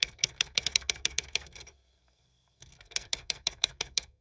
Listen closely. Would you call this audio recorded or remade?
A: remade